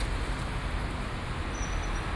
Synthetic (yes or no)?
no